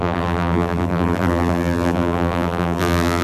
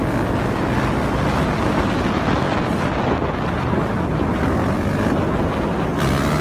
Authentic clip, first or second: second